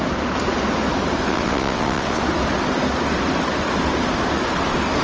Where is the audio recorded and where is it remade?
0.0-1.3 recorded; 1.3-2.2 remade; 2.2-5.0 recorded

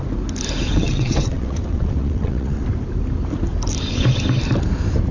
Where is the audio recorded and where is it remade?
0.0-0.7 recorded; 0.7-2.6 remade; 2.6-5.1 recorded